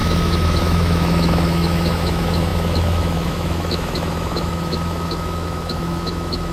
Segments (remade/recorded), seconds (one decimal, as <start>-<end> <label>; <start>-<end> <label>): 0.0-6.5 remade